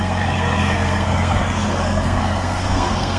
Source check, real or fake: fake